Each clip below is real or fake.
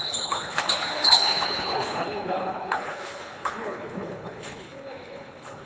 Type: fake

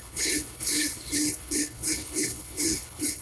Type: fake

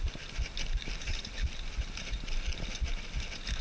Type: real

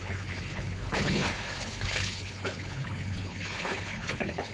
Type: fake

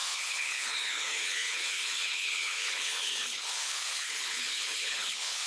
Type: fake